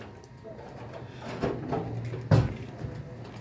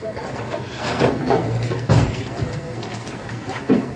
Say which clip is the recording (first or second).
first